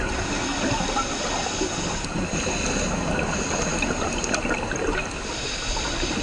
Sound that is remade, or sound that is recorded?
recorded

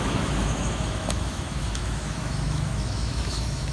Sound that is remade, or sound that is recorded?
remade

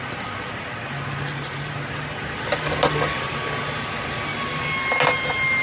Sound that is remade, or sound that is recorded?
recorded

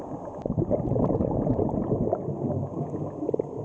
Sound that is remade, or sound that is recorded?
recorded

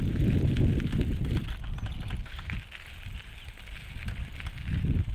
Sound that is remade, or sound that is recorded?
recorded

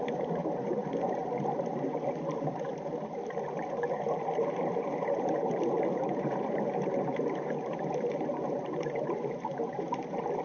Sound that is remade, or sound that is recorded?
remade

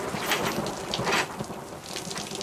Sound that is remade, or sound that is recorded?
recorded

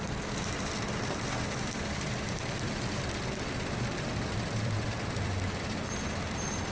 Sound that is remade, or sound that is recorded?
remade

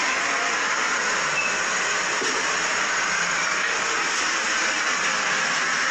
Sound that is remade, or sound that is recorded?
recorded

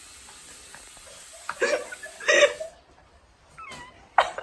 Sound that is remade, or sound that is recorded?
recorded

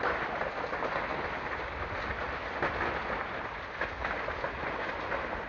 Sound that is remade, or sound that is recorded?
recorded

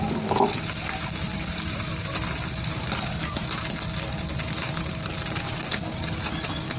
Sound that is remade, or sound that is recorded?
remade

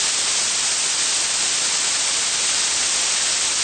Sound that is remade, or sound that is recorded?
recorded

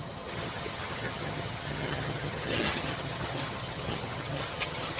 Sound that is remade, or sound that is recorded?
remade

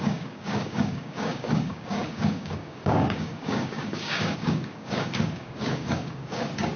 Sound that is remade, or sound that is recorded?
remade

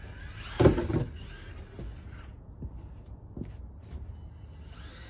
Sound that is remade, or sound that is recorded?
recorded